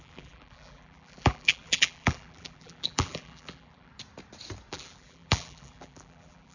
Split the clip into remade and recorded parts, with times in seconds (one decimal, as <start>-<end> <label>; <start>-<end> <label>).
0.0-3.9 remade; 3.9-4.7 recorded; 4.7-6.5 remade